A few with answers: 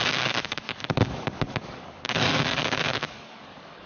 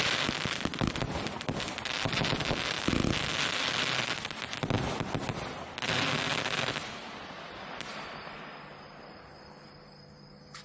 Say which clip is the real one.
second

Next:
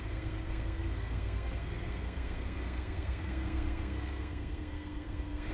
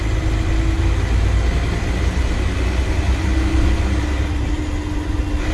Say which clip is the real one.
second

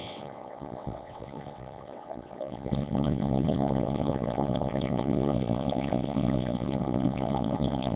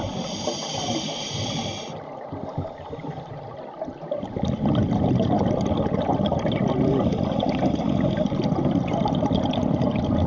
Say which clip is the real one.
second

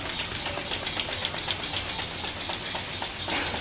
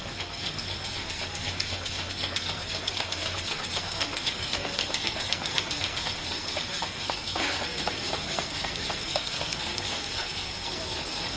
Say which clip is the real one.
first